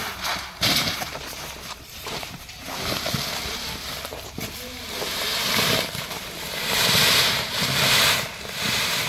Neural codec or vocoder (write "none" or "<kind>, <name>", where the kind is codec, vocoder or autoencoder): vocoder, BigVGAN v2